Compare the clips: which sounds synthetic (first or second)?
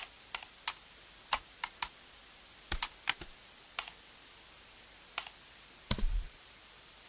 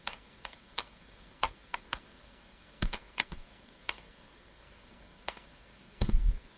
second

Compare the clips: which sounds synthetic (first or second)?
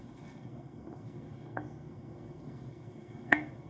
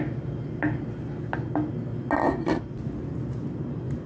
first